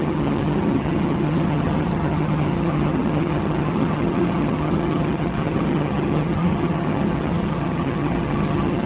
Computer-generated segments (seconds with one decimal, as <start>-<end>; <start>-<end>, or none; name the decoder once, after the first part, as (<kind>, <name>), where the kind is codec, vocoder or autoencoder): 0.0-8.9 (vocoder, HiFi-GAN)